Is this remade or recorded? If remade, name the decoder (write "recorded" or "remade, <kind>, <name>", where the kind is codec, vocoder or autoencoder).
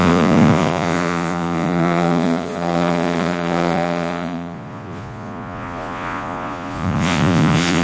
remade, vocoder, Vocos